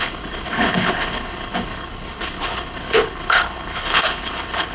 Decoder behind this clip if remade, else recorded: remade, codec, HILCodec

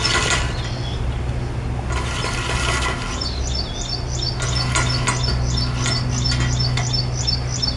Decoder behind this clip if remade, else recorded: recorded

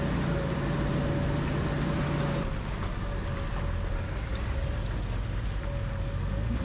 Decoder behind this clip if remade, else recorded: recorded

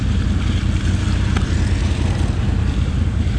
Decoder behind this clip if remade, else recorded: recorded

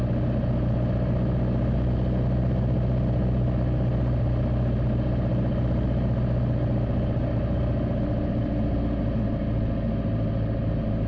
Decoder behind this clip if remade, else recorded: recorded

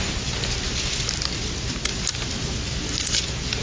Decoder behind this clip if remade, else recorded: recorded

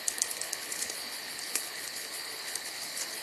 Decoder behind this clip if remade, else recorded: remade, codec, HILCodec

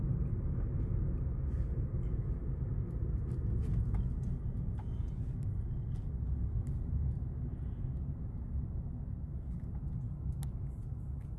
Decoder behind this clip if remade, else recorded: recorded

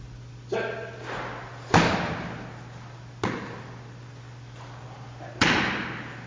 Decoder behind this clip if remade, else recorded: recorded